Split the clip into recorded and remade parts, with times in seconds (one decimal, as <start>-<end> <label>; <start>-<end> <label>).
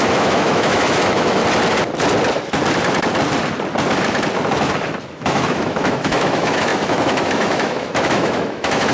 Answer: 0.0-1.4 remade; 1.4-5.1 recorded; 5.1-8.9 remade